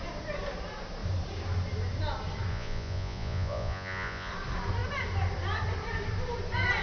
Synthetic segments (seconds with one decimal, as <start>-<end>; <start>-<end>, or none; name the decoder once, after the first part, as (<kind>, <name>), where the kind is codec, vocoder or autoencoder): 2.5-4.3 (vocoder, Vocos)